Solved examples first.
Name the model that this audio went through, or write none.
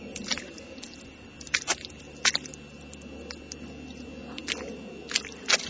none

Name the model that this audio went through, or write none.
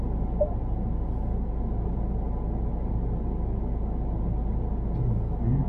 none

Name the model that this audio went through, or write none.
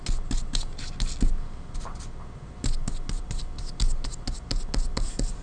none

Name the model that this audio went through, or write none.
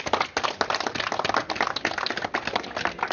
none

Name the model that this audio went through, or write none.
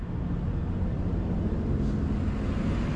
none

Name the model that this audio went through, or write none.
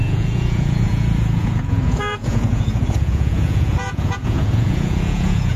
vocoder, Vocos